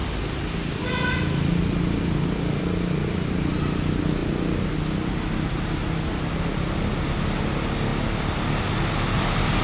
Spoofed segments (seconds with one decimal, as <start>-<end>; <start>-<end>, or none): none